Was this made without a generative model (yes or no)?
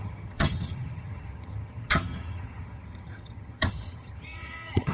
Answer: no